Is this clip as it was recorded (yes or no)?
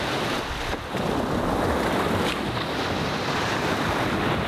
yes